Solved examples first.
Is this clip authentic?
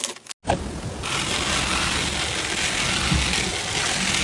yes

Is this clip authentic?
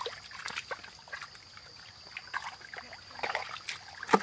yes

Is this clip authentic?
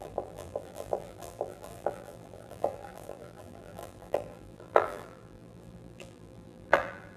no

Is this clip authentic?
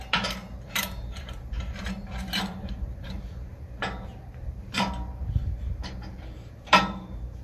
no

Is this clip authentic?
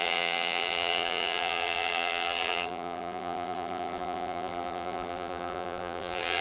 no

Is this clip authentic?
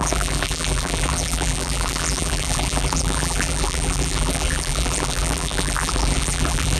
no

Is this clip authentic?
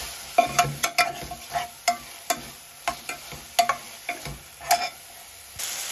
yes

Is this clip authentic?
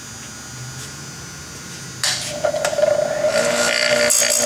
yes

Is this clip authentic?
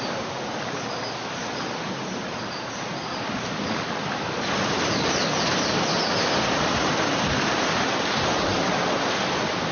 yes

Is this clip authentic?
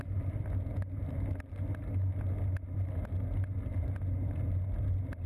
yes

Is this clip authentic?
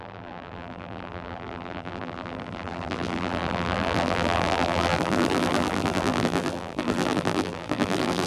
no